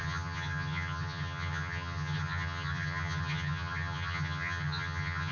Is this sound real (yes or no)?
no